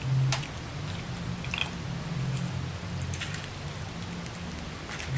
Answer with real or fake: real